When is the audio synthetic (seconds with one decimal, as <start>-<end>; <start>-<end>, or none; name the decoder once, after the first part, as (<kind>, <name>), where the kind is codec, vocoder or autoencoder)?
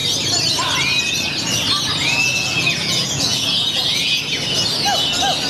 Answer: 2.0-4.2 (vocoder, Vocos)